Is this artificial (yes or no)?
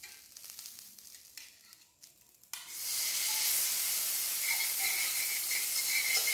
no